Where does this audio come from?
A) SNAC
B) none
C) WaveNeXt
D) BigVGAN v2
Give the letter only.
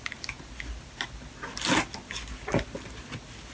B